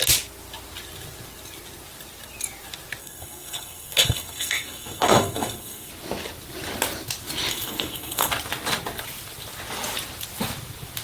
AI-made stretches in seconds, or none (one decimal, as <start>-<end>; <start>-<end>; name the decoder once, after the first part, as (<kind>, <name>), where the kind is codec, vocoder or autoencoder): 3.0-5.9 (codec, SNAC); 7.5-8.3